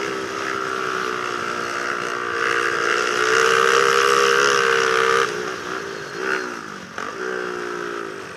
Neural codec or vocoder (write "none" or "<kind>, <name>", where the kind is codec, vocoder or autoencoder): none